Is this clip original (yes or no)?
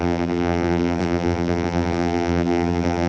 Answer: no